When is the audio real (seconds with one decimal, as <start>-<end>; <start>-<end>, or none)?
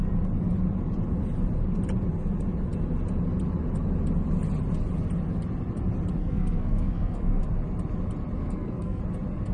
0.0-6.2; 7.4-8.4; 9.0-9.5